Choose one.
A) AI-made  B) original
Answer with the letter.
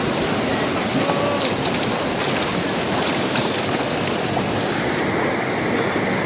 B